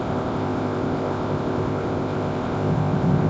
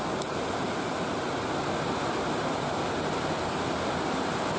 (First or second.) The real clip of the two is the second